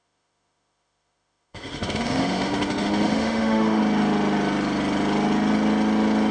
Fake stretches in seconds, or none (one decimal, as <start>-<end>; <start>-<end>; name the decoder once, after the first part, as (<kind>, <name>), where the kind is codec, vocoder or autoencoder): 0.0-3.8 (autoencoder, DAC-VAE)